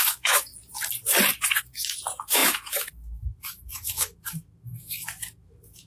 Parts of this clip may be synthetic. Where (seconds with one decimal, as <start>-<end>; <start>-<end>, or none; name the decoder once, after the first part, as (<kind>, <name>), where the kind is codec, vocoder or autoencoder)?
0.0-0.5 (autoencoder, DAC-VAE); 1.6-5.9